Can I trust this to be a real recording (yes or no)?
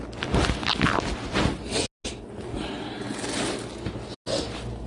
yes